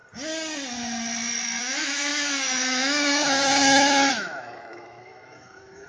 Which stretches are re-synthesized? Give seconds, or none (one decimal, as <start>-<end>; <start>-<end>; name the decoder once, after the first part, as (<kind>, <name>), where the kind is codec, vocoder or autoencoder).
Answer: 1.6-5.9 (autoencoder, DAC-VAE)